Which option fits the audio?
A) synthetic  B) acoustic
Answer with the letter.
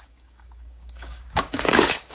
A